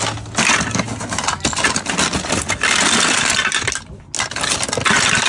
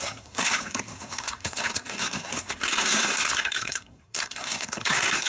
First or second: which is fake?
second